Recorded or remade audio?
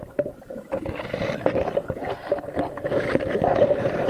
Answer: remade